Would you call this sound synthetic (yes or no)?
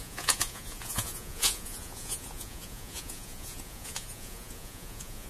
yes